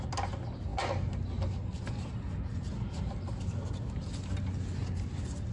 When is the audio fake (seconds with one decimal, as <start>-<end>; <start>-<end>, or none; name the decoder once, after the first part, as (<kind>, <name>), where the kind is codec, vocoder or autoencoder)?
none